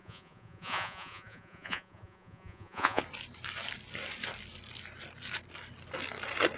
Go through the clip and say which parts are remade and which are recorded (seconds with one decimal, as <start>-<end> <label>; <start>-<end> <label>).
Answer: 0.0-3.0 remade; 3.0-6.6 recorded